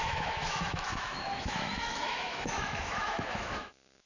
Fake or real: fake